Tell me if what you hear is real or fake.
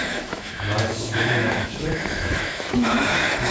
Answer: fake